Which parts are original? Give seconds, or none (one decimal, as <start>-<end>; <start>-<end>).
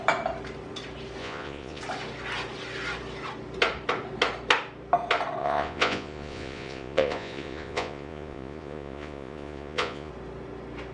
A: 0.0-1.2; 1.8-5.4; 10.1-10.9